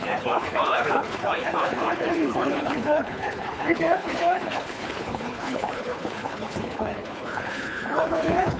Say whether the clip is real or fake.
fake